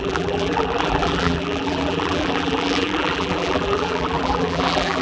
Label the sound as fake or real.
fake